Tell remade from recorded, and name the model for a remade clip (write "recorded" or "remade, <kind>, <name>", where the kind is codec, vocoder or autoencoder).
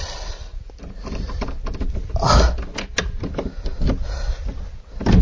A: recorded